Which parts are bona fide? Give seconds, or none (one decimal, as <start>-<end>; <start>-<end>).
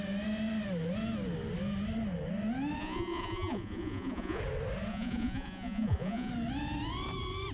0.0-2.8; 4.4-4.9; 6.3-7.5